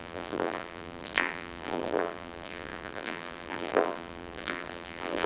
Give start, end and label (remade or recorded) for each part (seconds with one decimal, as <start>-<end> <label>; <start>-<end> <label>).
0.0-5.3 remade